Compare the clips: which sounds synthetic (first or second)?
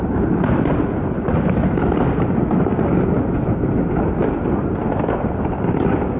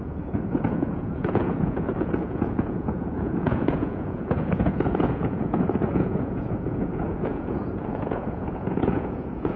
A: second